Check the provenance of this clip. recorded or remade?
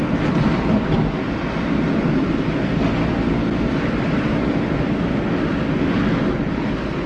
recorded